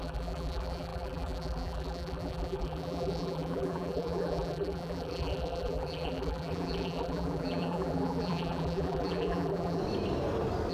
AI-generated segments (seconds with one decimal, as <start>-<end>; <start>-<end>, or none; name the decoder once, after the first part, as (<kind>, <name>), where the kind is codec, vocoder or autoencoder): 0.0-9.8 (vocoder, BigVGAN v2)